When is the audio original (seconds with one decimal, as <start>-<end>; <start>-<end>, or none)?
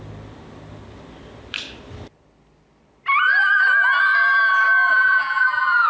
0.0-4.9